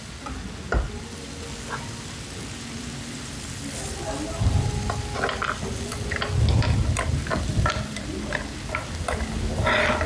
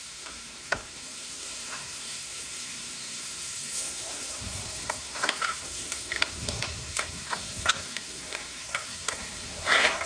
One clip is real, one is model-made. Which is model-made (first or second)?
second